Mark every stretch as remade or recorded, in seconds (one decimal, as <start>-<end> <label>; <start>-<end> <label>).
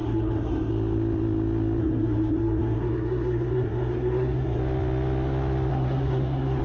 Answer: 0.0-0.7 remade; 0.7-1.8 recorded; 1.8-4.6 remade; 4.6-5.7 recorded; 5.7-6.6 remade